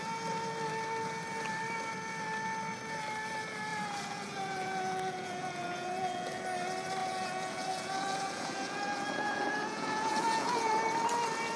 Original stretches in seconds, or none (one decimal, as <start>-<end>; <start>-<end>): 0.0-3.7; 6.4-7.0; 10.7-11.6